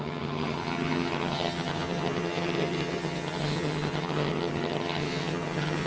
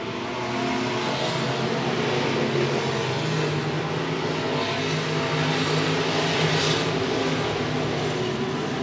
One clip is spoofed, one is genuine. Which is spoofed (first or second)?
first